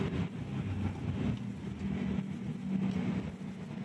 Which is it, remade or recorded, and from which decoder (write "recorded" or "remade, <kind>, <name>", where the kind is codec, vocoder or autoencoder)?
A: recorded